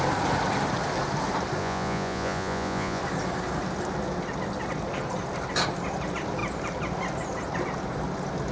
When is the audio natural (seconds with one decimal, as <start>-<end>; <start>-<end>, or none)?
0.0-1.6; 3.0-8.5